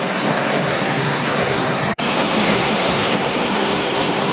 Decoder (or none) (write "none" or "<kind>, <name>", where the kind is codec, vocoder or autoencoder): codec, SNAC